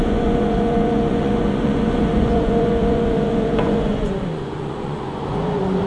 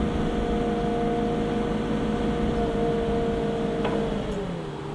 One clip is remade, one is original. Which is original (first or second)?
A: second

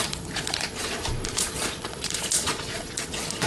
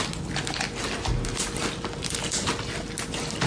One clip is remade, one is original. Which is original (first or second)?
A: second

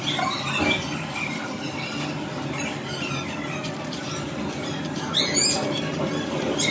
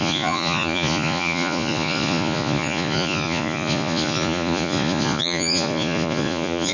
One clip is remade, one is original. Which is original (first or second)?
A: first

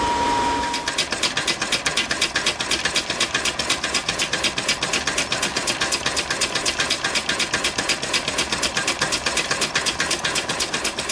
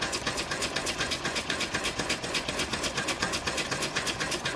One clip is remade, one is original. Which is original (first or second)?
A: first